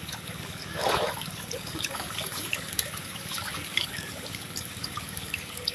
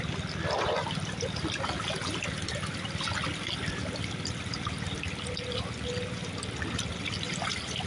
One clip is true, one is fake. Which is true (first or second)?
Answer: second